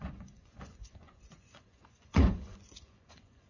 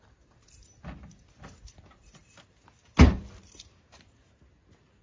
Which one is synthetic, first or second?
first